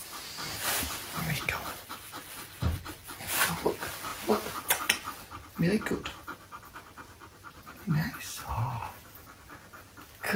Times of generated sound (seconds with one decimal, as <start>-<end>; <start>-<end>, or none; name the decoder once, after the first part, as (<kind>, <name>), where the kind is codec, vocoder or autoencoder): 0.0-2.0 (vocoder, BigVGAN v2)